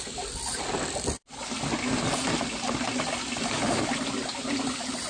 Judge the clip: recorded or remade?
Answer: recorded